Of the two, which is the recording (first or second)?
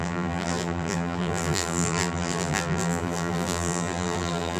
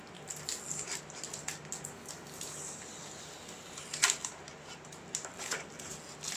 second